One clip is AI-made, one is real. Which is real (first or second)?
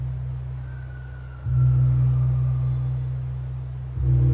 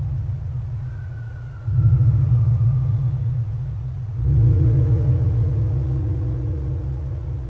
first